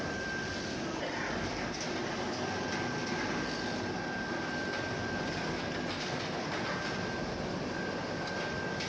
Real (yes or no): no